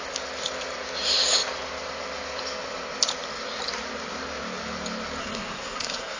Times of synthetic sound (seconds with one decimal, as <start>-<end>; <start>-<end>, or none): 5.2-6.2